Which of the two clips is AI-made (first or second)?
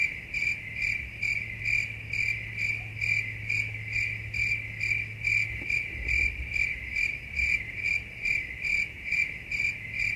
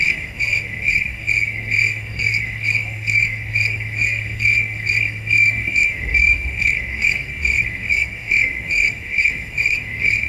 second